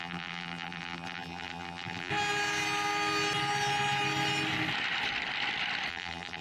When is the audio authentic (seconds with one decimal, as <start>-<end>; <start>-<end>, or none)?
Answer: 2.1-5.9